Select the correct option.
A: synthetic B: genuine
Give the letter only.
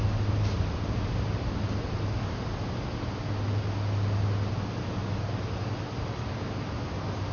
B